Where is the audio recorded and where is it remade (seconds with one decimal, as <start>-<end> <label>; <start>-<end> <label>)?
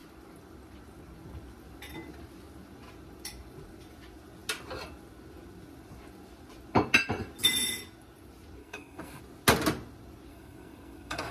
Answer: 0.0-8.6 recorded; 8.6-9.2 remade; 9.2-10.3 recorded; 10.3-11.3 remade